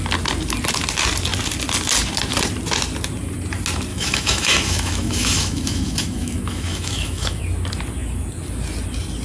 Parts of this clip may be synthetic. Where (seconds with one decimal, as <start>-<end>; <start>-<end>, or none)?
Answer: 3.9-7.4